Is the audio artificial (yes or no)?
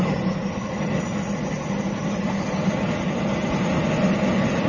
no